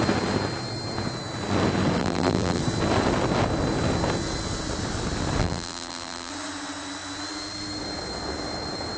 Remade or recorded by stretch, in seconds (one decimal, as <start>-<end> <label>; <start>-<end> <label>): 0.0-2.0 recorded; 2.0-2.6 remade; 2.6-5.4 recorded; 5.4-6.3 remade; 6.3-9.0 recorded